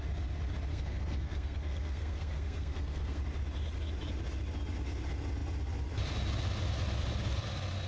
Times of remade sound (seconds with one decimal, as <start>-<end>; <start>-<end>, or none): 0.7-3.2